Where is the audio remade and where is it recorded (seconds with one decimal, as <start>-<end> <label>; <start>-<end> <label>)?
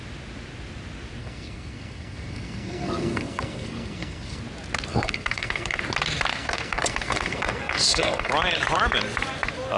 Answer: 0.0-1.2 recorded; 1.2-4.4 remade; 4.4-4.9 recorded; 4.9-5.8 remade; 5.8-6.3 recorded; 6.3-8.3 remade; 8.3-9.8 recorded